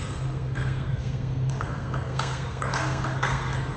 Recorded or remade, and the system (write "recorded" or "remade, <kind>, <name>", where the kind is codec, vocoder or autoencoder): remade, codec, SNAC